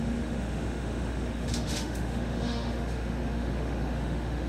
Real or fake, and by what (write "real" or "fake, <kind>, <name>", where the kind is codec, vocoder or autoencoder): fake, autoencoder, DAC-VAE